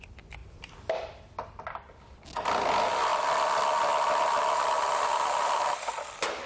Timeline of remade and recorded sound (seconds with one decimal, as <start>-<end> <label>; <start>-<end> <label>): 0.0-0.4 recorded; 0.4-1.6 remade; 1.6-3.1 recorded; 3.1-6.5 remade